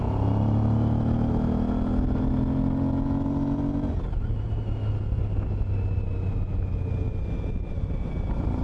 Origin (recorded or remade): recorded